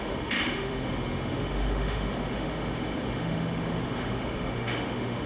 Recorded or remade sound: remade